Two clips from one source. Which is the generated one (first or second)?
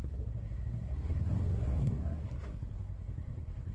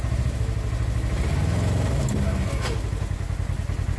first